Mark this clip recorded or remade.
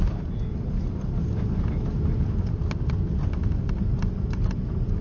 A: recorded